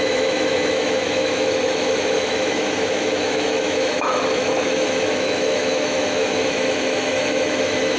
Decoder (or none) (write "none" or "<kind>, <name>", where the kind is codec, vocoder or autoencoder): autoencoder, DAC-VAE